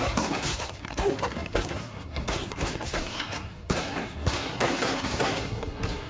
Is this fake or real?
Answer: fake